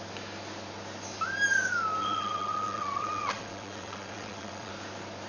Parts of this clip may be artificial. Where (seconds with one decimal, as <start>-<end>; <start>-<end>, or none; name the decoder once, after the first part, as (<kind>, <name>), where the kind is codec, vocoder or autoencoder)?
2.0-4.7 (vocoder, WaveNeXt)